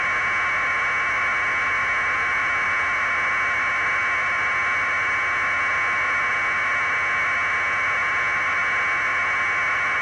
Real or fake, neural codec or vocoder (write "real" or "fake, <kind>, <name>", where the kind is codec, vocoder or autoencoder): real